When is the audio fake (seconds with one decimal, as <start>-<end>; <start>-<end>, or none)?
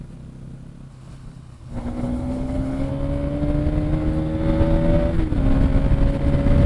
0.9-2.9